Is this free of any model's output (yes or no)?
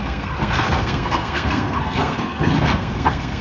no